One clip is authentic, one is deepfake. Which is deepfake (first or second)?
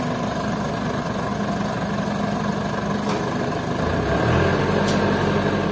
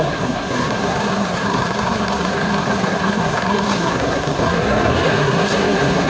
second